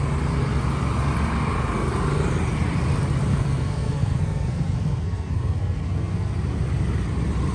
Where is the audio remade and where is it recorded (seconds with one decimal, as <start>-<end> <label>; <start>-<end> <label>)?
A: 0.0-3.3 recorded; 3.3-6.3 remade; 6.3-7.5 recorded